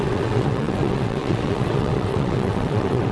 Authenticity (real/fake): fake